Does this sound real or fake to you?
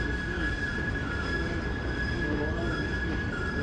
real